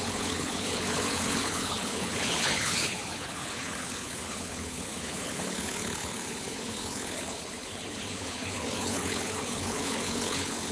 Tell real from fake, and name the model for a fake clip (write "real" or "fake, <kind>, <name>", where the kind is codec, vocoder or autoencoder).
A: fake, codec, HILCodec